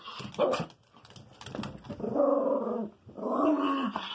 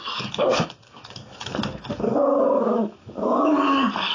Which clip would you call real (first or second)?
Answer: first